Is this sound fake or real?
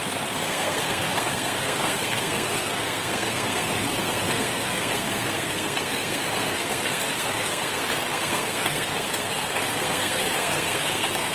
fake